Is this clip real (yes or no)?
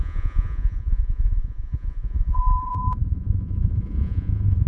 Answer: no